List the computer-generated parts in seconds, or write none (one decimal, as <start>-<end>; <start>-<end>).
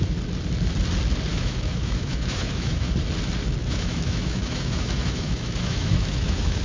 1.3-2.9; 3.6-6.6